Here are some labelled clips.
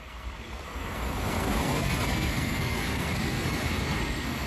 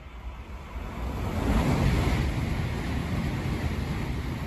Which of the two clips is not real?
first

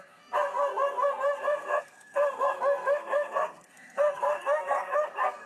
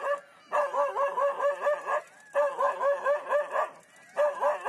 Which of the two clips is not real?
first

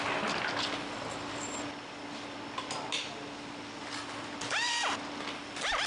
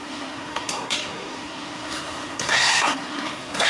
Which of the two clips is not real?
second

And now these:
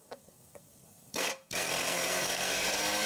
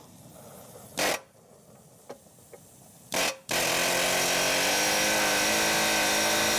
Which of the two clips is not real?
first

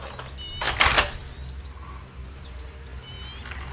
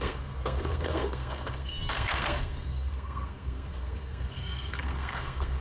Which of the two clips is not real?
second